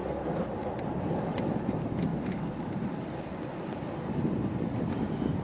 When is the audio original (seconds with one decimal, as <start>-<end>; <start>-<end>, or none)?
0.0-5.4